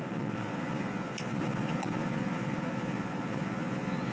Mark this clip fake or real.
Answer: fake